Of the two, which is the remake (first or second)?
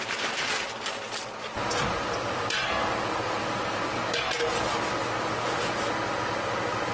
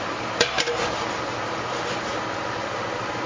second